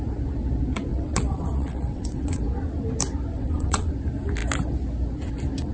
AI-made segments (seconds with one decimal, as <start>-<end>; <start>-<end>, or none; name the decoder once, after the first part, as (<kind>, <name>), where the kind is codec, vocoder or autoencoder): 0.9-2.4 (vocoder, WaveNeXt); 3.3-3.9

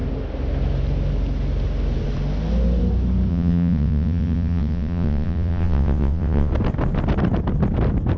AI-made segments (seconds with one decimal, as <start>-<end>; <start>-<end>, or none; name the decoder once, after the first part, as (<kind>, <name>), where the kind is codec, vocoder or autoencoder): 3.3-6.5 (vocoder, WaveNeXt)

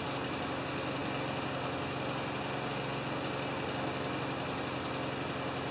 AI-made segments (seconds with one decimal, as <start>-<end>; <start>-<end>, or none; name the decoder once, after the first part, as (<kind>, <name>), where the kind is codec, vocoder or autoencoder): none

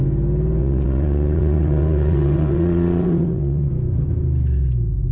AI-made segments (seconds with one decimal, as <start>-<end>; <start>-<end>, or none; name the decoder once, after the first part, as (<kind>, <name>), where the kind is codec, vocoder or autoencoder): 0.6-3.7 (vocoder, WaveNeXt)

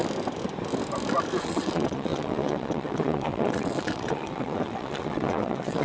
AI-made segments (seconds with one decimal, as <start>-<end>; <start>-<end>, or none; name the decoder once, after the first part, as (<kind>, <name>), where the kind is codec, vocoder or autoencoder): 1.4-5.8 (vocoder, WaveNeXt)

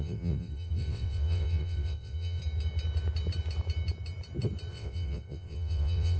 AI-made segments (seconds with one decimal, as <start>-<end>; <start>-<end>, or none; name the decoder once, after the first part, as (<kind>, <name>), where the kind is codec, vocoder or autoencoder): 0.0-2.4 (vocoder, WaveNeXt); 4.7-6.2

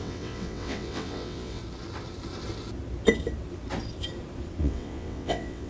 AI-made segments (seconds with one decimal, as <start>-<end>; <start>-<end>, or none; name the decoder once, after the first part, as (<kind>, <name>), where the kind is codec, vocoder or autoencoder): 0.0-1.6 (vocoder, WaveNeXt); 4.6-5.7